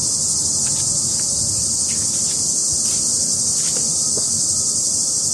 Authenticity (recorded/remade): recorded